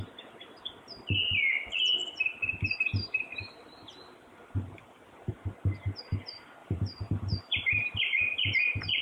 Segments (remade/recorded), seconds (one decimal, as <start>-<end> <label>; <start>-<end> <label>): 0.0-4.4 recorded; 4.4-5.3 remade; 5.3-6.6 recorded; 6.6-8.2 remade; 8.2-9.0 recorded